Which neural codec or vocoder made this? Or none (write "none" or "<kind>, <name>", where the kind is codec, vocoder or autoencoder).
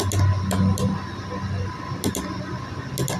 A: none